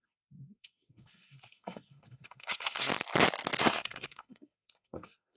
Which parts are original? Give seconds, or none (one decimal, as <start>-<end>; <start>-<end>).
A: 2.9-3.6